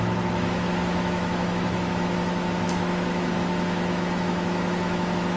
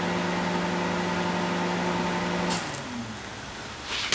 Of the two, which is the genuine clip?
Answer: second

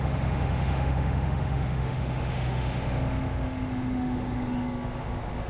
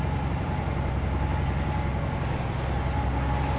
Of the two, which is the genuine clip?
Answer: second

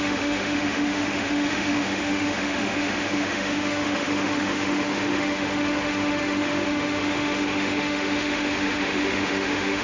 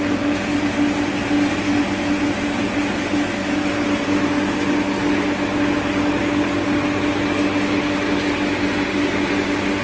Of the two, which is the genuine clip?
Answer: second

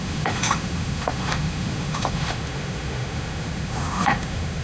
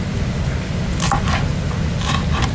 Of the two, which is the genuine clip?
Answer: second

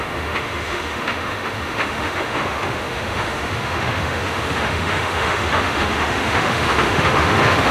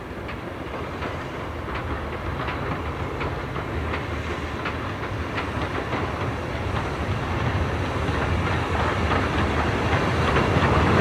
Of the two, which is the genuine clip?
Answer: second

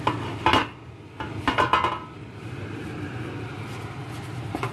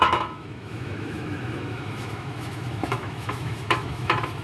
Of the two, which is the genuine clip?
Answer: first